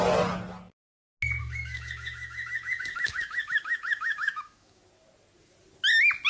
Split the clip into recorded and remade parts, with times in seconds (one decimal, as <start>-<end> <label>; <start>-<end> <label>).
0.0-1.4 recorded; 1.4-4.8 remade; 4.8-6.3 recorded